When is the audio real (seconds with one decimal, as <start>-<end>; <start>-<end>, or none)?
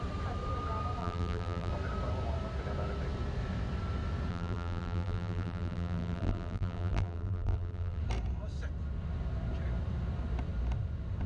0.0-1.0; 1.7-4.3; 8.0-11.3